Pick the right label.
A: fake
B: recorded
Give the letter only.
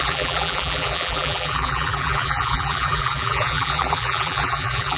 A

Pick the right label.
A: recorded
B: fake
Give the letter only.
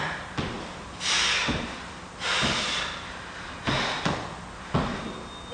A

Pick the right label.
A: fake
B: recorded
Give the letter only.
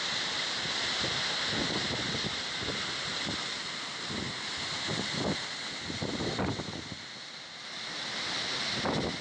B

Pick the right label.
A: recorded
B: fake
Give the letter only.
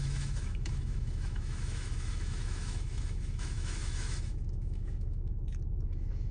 B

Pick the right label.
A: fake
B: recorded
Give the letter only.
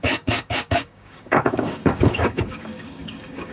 A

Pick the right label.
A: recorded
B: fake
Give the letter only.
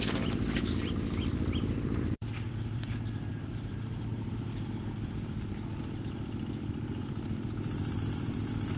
B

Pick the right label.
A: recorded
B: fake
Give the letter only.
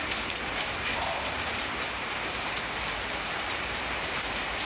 B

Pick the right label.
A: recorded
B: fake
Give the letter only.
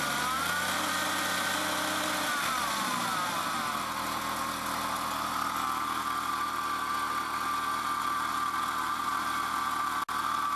A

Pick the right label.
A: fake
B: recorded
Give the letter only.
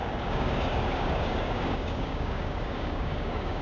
A